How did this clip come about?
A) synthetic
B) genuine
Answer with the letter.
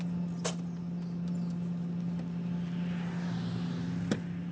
B